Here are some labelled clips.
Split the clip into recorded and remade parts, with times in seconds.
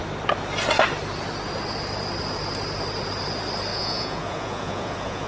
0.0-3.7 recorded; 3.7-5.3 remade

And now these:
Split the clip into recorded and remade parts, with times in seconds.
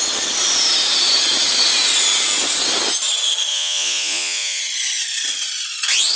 0.0-3.5 recorded; 3.5-4.6 remade; 4.6-6.2 recorded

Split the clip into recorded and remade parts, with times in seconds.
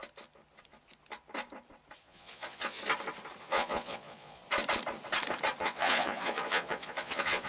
0.0-2.0 recorded; 2.0-2.8 remade; 2.8-3.4 recorded; 3.4-4.4 remade; 4.4-5.6 recorded; 5.6-7.5 remade